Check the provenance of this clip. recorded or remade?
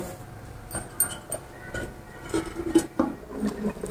recorded